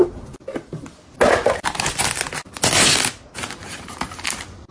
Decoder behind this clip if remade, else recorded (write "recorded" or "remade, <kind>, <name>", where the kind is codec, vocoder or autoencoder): recorded